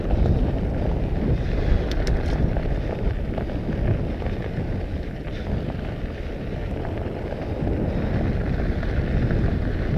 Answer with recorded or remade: recorded